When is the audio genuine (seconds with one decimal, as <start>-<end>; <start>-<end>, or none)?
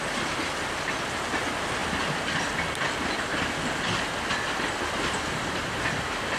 0.0-6.4